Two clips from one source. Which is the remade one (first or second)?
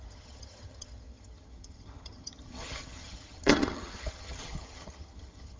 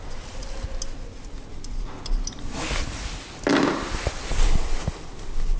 first